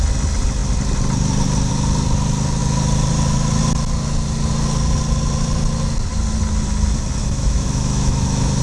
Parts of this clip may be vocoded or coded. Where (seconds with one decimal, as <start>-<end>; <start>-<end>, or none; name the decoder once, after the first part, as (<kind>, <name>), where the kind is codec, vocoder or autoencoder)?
7.2-8.6 (autoencoder, DAC-VAE)